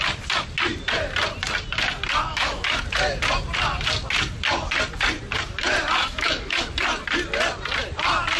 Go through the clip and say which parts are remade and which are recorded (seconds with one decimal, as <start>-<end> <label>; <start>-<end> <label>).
0.0-2.3 recorded; 2.3-2.8 remade; 2.8-6.0 recorded; 6.0-6.6 remade; 6.6-8.4 recorded